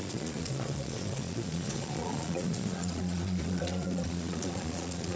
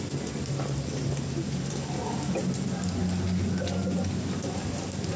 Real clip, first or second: second